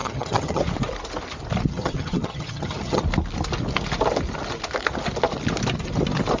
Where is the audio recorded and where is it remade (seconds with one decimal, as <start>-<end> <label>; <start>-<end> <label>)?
0.0-0.6 remade; 0.6-1.7 recorded; 1.7-3.0 remade; 3.0-6.4 recorded